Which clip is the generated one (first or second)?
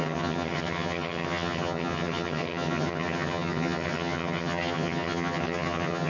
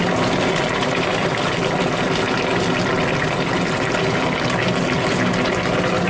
first